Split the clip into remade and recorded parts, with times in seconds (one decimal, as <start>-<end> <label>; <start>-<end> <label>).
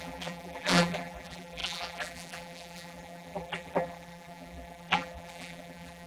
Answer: 0.0-6.1 remade